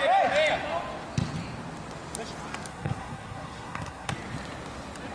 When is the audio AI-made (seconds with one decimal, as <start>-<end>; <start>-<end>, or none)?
2.7-4.1